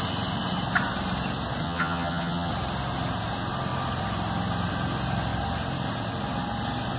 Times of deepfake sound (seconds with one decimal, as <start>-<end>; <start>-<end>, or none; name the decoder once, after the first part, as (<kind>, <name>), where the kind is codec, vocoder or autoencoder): 1.6-2.5 (vocoder, HiFi-GAN)

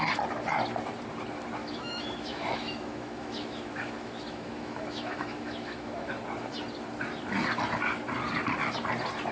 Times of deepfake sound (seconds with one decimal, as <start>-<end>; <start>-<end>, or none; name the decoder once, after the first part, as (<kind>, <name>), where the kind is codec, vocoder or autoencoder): 1.6-6.1 (autoencoder, DAC-VAE)